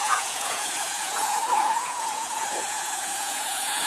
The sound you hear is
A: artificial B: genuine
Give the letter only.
A